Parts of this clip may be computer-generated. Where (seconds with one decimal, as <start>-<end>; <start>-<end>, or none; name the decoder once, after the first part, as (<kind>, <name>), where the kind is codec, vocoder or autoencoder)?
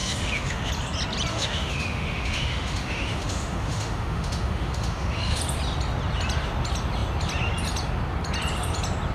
0.0-0.7 (autoencoder, DAC-VAE); 1.3-5.4